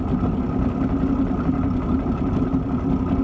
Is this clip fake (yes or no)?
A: no